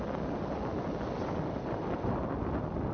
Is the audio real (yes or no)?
yes